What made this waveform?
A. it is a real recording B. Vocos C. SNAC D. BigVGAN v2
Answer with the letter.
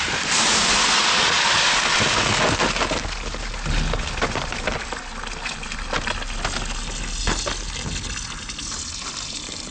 A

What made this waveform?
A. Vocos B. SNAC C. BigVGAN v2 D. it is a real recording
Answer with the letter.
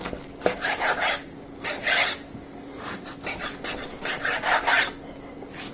D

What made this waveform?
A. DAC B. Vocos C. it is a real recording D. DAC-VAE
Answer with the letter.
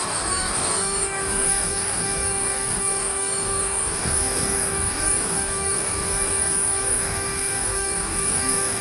A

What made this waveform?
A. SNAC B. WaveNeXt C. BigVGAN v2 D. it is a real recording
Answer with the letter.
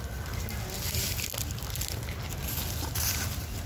D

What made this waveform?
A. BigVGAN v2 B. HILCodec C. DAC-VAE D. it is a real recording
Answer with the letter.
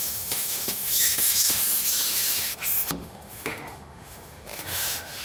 C